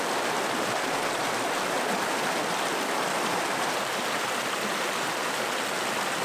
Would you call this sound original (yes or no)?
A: yes